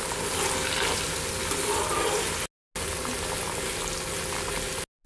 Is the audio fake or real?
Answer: real